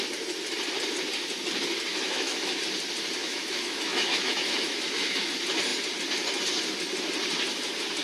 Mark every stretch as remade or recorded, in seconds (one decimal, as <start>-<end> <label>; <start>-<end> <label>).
0.0-1.9 recorded; 1.9-2.6 remade; 2.6-3.2 recorded; 3.2-5.3 remade; 5.3-8.0 recorded